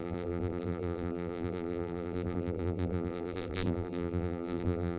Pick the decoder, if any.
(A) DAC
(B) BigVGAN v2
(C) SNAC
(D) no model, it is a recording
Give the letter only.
B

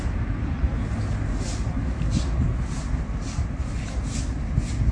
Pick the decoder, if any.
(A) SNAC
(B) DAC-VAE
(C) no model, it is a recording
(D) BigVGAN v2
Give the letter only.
C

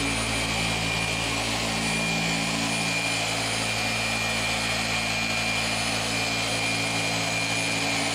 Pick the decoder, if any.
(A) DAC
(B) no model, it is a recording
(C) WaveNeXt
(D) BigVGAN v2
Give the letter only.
B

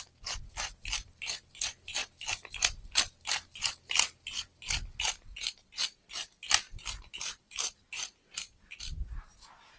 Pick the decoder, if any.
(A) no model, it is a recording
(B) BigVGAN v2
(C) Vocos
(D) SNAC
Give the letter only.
A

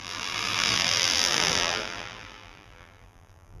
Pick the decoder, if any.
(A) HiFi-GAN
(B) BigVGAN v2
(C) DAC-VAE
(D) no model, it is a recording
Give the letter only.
B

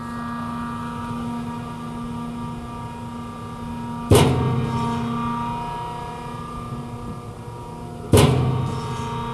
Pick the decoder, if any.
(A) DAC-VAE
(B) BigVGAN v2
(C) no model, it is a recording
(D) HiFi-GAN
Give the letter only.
C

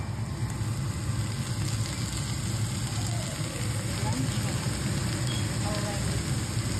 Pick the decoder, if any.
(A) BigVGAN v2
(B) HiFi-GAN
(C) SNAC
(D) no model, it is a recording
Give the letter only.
D